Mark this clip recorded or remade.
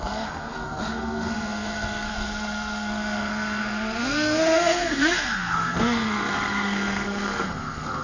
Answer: remade